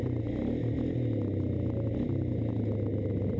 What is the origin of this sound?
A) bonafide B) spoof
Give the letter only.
A